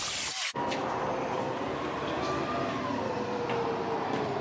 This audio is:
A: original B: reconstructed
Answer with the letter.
A